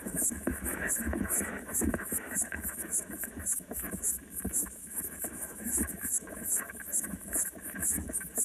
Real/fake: fake